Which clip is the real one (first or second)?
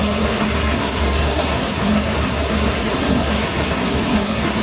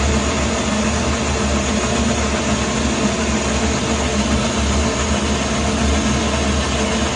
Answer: second